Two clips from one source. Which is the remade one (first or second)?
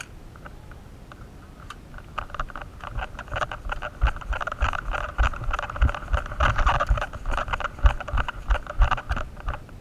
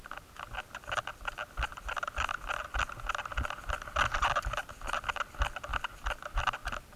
first